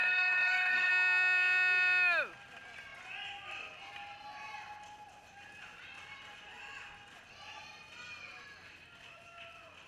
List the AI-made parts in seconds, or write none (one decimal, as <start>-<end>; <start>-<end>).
0.0-0.9

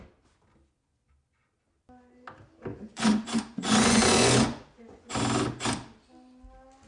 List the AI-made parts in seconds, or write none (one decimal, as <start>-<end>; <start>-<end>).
2.7-5.1

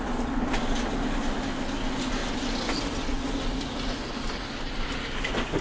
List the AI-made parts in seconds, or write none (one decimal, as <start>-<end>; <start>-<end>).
none

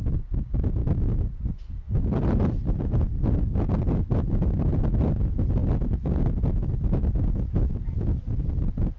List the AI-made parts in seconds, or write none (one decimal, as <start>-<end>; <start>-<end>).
none

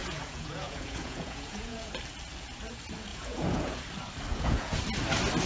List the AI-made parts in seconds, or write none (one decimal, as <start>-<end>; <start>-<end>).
0.0-1.9; 3.1-3.8; 4.3-4.8

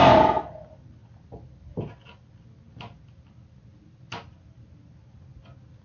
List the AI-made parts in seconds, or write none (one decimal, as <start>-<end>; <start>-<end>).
none

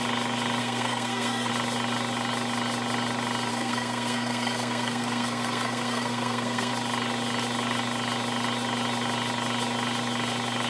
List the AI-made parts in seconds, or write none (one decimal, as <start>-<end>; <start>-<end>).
0.6-1.5; 3.5-6.7